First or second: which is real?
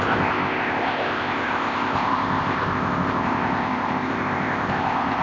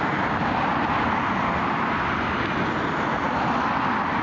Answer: second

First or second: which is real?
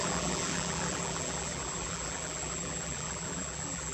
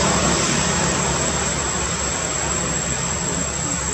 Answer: second